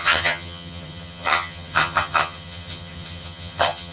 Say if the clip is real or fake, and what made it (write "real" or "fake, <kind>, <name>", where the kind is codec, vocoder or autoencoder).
fake, vocoder, HiFi-GAN